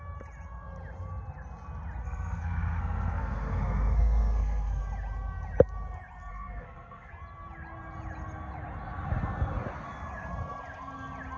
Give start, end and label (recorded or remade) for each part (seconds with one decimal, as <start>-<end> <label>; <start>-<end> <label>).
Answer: 0.0-2.0 recorded; 2.0-4.8 remade; 4.8-6.3 recorded; 6.3-7.1 remade; 7.1-11.4 recorded